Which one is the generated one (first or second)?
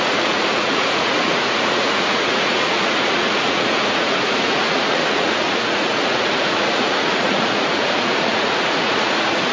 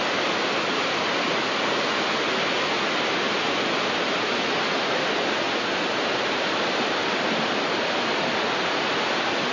first